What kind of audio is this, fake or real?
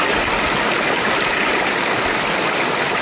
real